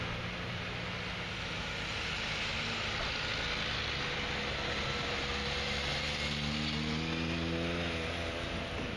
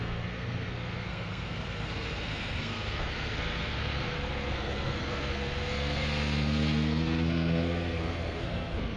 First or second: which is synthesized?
second